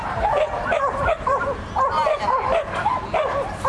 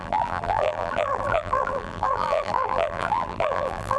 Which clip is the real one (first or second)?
first